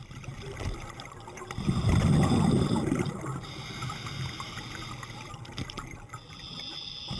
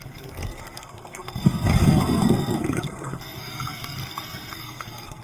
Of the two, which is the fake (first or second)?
second